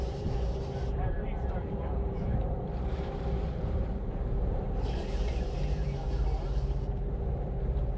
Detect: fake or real fake